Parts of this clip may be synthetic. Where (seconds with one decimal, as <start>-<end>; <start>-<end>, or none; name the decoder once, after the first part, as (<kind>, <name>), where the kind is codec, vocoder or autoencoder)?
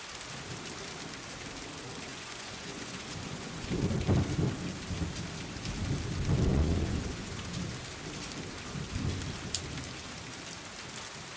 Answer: 2.1-3.8 (vocoder, Vocos); 6.5-7.7